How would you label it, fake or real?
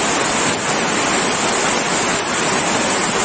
real